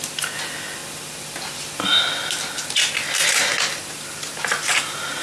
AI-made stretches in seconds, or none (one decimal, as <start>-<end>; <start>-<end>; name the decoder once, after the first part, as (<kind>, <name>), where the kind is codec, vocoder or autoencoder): none